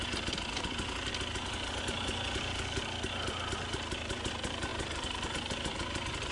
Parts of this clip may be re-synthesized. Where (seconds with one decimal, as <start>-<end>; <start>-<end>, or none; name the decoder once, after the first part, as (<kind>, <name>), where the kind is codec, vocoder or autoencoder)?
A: 4.7-6.3 (vocoder, BigVGAN v2)